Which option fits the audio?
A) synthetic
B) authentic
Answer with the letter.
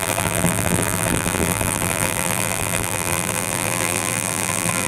A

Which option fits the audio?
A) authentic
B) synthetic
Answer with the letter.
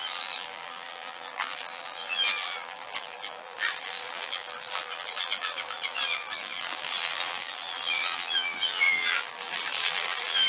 B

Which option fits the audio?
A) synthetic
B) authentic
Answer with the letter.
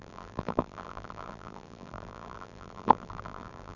A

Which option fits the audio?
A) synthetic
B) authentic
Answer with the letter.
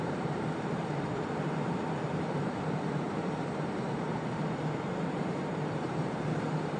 A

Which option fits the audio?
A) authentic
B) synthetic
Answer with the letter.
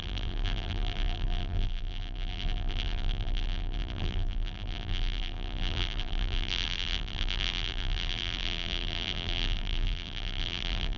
B